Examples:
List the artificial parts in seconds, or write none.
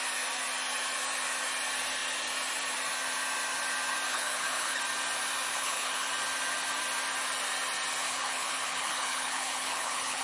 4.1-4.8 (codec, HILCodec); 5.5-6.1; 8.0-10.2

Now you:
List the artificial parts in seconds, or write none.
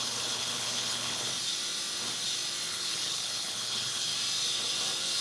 0.0-1.3 (codec, HILCodec); 2.7-4.1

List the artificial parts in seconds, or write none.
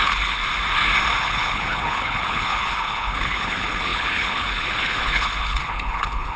0.0-0.4 (codec, HILCodec); 1.2-6.4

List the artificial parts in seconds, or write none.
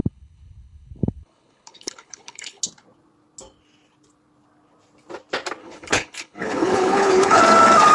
0.0-2.6 (codec, HILCodec); 5.6-7.4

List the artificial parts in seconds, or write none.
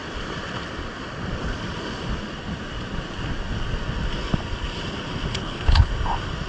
5.3-5.9 (codec, HILCodec)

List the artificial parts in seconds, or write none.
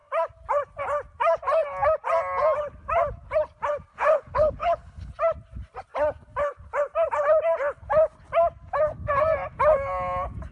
3.9-5.1 (codec, HILCodec)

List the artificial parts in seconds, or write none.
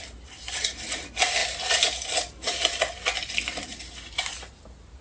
none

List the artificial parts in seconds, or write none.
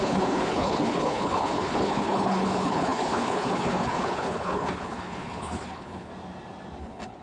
0.0-6.1 (codec, HILCodec); 6.8-7.2